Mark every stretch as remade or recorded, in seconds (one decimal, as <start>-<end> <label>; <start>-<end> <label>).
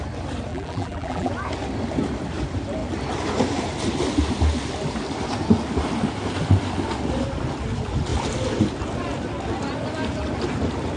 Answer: 0.0-0.5 recorded; 0.5-1.3 remade; 1.3-11.0 recorded